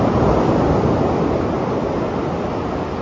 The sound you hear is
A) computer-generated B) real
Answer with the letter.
B